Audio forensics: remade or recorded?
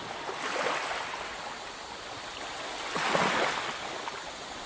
recorded